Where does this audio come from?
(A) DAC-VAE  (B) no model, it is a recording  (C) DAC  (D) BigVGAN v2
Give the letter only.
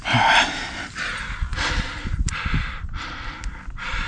B